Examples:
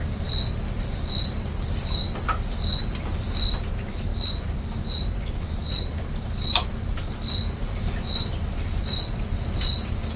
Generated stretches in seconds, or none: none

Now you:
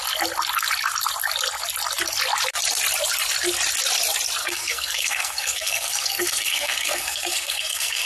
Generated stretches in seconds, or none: 4.4-8.1 (codec, SNAC)

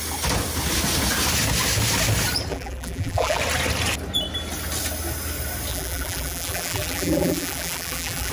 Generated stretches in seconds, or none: 2.5-3.4 (vocoder, BigVGAN v2); 5.7-8.3

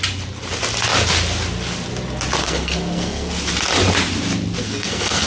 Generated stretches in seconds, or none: 2.4-3.3 (codec, SNAC); 4.6-5.3

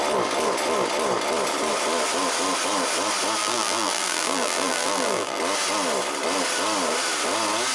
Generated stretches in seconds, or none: 3.4-5.4 (vocoder, BigVGAN v2)

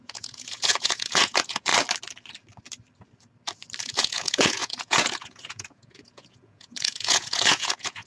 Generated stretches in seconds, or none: 0.0-1.7 (vocoder, Vocos); 3.8-8.1

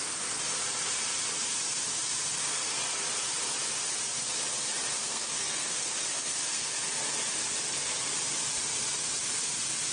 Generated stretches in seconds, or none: 5.0-6.8 (codec, SNAC)